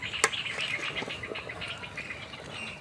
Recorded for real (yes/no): yes